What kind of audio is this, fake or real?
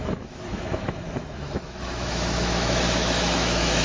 fake